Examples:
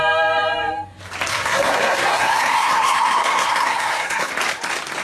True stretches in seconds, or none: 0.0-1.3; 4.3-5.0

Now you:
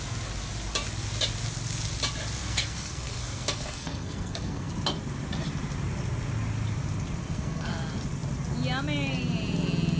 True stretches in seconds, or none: 0.0-2.4; 4.7-7.2; 7.7-10.0

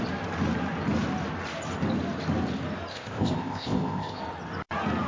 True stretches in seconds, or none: 0.0-2.9; 4.2-5.1

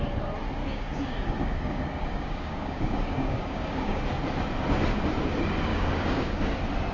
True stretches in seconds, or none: 0.0-0.6; 4.0-5.7; 6.5-6.9

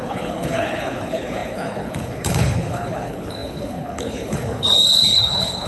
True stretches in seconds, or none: none

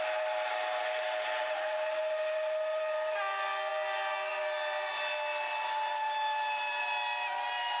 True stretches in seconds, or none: 0.0-7.8

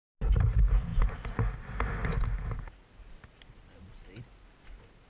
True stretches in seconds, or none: 0.0-5.1

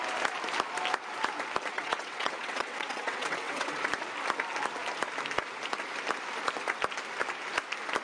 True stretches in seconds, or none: 0.0-1.7; 3.9-8.0